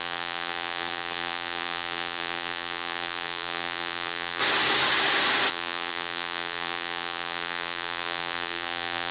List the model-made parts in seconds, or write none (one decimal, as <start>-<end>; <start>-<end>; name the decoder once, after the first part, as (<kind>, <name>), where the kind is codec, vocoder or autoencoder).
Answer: 0.0-4.4 (vocoder, BigVGAN v2); 5.5-9.1